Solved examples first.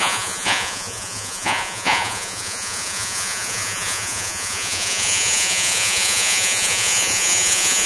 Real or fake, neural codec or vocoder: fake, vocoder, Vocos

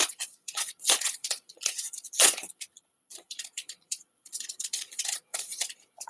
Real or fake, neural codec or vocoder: fake, vocoder, Vocos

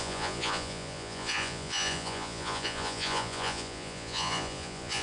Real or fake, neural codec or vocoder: fake, vocoder, Vocos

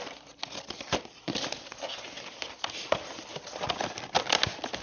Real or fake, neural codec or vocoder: real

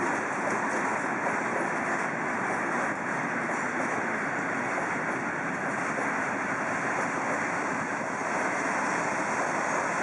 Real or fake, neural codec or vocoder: real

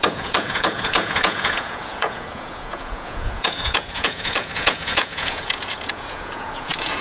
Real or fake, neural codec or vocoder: fake, vocoder, Vocos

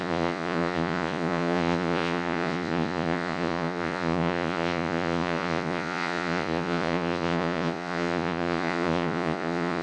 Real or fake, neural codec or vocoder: fake, vocoder, Vocos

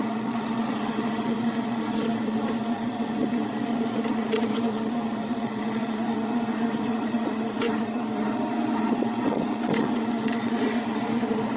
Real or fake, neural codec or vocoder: fake, vocoder, Vocos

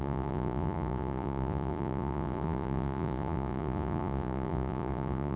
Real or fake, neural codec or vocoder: fake, vocoder, Vocos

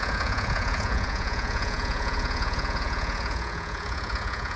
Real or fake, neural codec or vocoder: fake, vocoder, Vocos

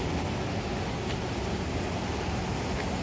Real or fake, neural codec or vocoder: real